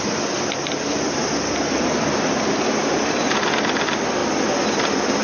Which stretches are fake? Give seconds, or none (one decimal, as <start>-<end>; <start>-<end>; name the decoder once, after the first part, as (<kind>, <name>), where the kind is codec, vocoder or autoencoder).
2.8-3.3 (vocoder, BigVGAN v2)